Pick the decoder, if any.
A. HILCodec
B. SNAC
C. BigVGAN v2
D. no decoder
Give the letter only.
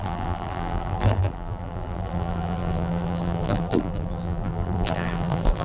C